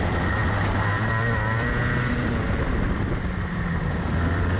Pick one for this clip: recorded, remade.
remade